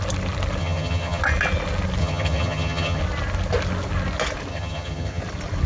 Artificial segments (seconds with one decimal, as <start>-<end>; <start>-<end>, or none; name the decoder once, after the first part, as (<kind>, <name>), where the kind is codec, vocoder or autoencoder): 0.6-1.2 (vocoder, HiFi-GAN); 2.0-3.0; 4.5-5.2